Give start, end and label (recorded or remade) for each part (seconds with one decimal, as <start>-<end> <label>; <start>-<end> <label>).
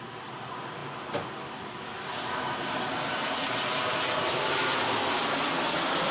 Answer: 0.0-6.1 recorded